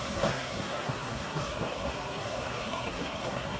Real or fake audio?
fake